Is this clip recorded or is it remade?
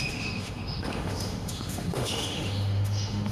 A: remade